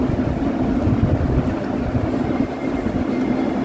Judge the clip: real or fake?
real